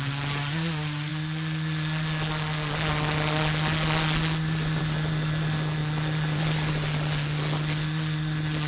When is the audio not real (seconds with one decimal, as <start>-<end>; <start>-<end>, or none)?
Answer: none